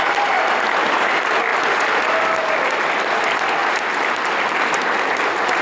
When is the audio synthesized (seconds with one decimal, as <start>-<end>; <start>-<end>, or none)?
none